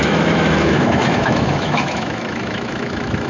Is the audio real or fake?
fake